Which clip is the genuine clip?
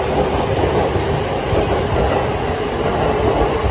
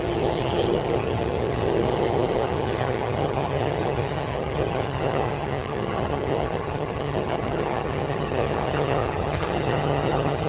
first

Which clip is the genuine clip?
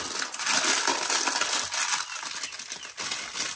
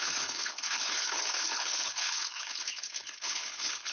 first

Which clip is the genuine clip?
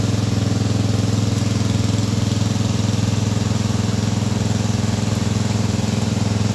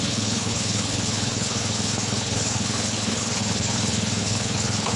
first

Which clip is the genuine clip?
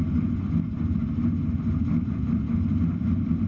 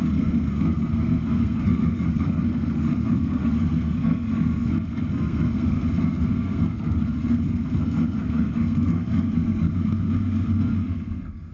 first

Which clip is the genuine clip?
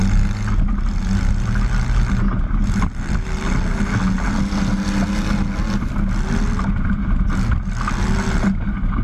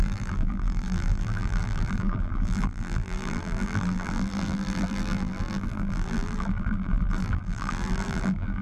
first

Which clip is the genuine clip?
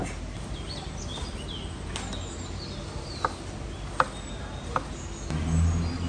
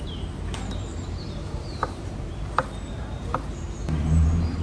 first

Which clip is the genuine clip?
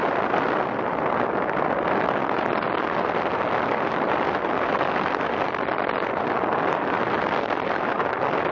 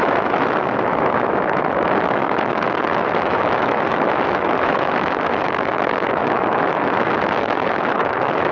first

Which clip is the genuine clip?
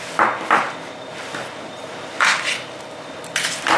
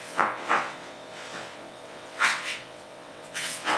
first